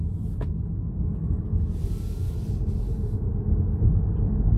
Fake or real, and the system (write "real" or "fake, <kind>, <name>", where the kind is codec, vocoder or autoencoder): real